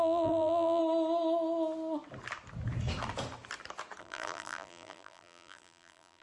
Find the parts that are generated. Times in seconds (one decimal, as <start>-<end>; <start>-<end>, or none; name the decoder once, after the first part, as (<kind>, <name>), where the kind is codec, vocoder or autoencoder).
0.0-0.8 (vocoder, BigVGAN v2); 4.0-6.2